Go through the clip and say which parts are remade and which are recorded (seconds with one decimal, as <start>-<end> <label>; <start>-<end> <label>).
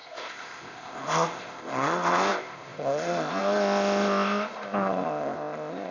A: 0.0-5.9 remade